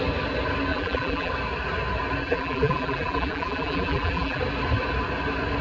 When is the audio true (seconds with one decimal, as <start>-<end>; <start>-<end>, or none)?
0.0-0.7; 1.3-2.2; 4.4-5.6

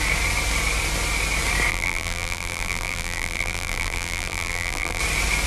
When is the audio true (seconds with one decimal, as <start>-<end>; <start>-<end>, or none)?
0.0-1.7; 5.0-5.5

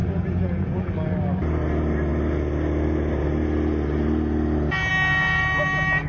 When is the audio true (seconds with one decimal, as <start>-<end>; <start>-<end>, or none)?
0.9-6.1

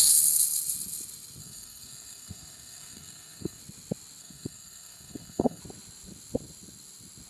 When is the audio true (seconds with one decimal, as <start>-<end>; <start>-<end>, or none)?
0.0-1.4; 3.6-4.2; 5.6-7.3

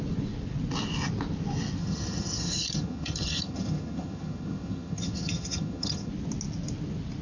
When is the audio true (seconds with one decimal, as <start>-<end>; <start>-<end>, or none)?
0.0-1.8; 6.1-7.2